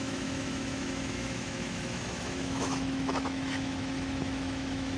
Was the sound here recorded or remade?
remade